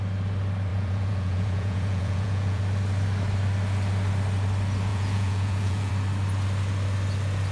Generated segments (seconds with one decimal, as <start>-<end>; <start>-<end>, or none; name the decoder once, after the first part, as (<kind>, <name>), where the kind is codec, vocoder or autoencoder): 0.7-2.6 (vocoder, Vocos); 4.9-5.9